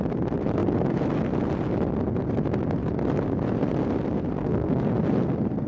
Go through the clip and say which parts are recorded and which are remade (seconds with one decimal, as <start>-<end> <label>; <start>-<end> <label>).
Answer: 0.0-4.4 recorded; 4.4-4.9 remade; 4.9-5.7 recorded